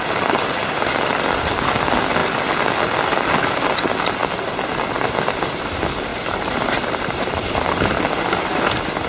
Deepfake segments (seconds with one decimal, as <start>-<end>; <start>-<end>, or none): 6.1-7.9